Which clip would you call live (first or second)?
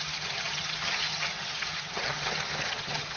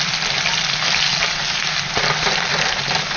second